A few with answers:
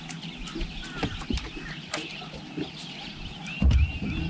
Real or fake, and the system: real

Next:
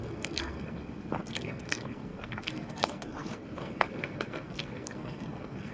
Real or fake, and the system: fake, codec, SNAC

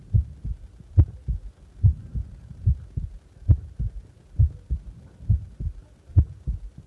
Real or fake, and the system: real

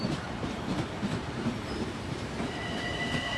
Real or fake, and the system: fake, vocoder, BigVGAN v2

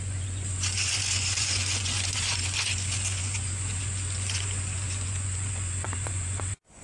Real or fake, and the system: fake, vocoder, Vocos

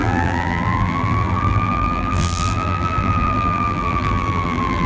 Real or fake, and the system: fake, vocoder, BigVGAN v2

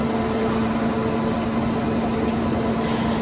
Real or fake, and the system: real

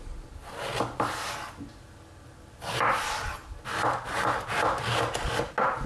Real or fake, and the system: real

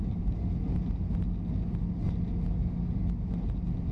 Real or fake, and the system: real